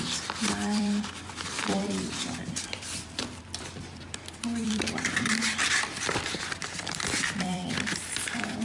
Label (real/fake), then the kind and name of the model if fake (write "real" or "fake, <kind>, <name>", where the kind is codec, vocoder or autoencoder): fake, vocoder, BigVGAN v2